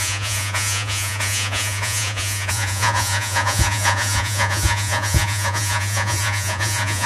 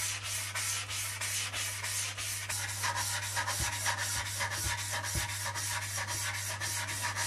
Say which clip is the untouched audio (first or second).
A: second